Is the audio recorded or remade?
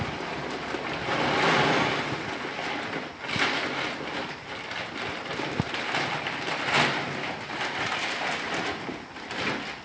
recorded